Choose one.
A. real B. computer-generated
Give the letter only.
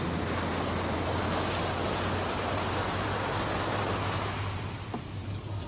A